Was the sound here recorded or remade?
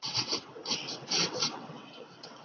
remade